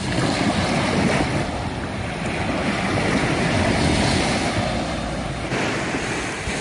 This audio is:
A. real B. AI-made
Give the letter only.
A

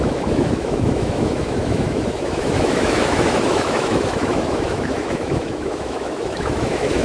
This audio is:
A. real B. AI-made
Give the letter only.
B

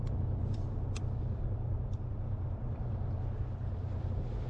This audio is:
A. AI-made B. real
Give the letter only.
B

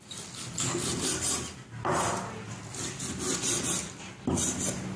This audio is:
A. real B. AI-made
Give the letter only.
A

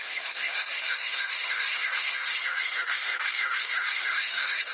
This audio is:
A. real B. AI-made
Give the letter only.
B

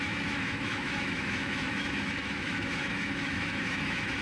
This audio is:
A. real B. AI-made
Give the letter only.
B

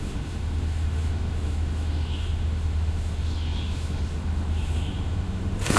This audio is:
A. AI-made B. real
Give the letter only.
A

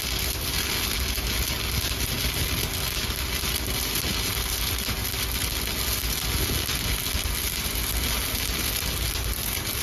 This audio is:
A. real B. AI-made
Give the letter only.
A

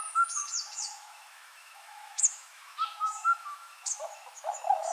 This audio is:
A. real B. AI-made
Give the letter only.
B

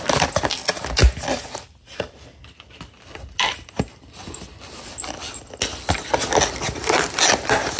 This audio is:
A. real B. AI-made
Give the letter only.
A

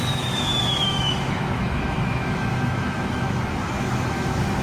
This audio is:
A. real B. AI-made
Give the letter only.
B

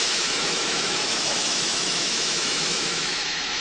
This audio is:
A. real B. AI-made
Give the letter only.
B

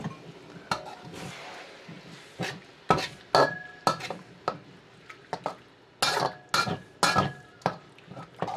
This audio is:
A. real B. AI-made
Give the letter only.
A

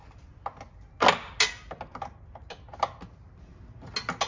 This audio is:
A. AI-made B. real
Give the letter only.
B